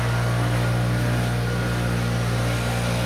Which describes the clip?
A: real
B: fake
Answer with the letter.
A